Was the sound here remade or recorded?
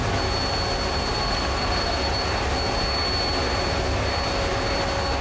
recorded